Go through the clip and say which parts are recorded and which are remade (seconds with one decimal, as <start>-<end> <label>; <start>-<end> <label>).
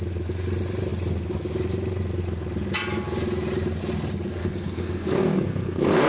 0.0-4.4 recorded; 4.4-6.1 remade